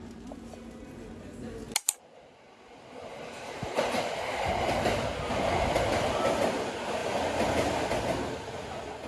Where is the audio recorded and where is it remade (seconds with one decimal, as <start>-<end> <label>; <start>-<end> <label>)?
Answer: 0.0-3.1 recorded; 3.1-5.3 remade; 5.3-9.1 recorded

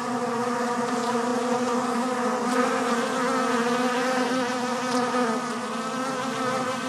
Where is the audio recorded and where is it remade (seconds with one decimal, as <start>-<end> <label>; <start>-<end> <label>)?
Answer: 0.0-2.7 remade; 2.7-6.0 recorded; 6.0-6.9 remade

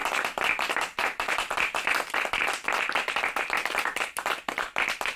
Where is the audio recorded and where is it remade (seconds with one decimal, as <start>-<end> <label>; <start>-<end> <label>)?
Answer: 0.0-0.5 recorded; 0.5-1.0 remade; 1.0-4.1 recorded; 4.1-5.2 remade

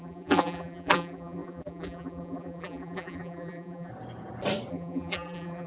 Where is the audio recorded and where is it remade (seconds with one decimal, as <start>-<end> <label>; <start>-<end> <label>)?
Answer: 0.0-3.9 remade; 3.9-4.7 recorded; 4.7-5.7 remade